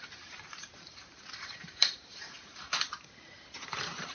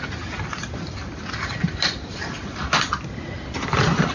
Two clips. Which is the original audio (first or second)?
second